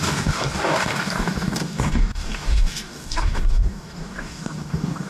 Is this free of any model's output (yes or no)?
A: no